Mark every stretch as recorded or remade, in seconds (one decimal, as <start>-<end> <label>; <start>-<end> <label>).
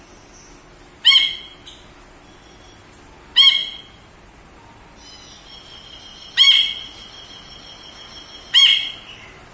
0.0-9.5 recorded